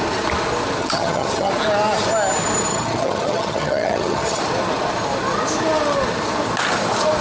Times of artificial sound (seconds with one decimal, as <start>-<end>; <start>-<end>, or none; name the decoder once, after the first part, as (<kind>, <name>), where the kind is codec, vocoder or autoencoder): 0.8-1.5 (vocoder, HiFi-GAN); 2.7-4.4